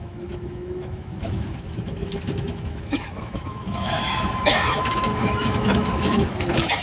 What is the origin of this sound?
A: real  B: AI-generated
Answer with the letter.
B